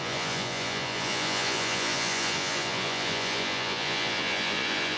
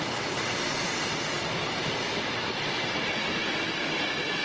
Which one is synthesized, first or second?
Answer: first